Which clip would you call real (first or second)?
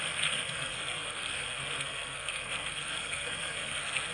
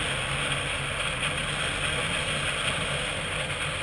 second